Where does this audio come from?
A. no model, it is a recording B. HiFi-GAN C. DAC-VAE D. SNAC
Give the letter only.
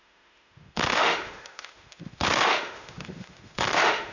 C